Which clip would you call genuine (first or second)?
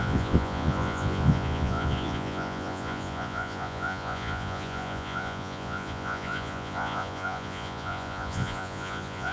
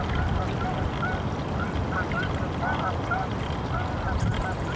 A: second